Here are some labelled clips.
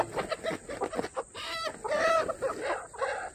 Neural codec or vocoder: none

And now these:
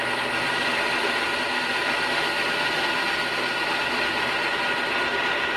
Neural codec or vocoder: none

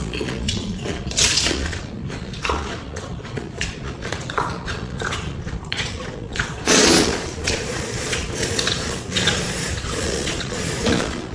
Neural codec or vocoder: vocoder, Vocos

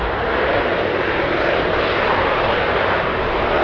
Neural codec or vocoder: none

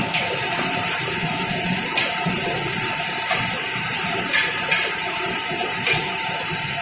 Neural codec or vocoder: vocoder, BigVGAN v2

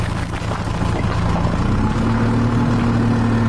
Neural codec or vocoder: none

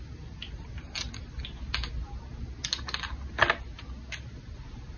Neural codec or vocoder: none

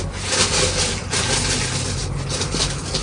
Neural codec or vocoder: none